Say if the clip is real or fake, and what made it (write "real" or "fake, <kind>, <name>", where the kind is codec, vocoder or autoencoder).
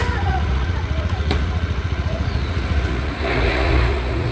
fake, vocoder, Vocos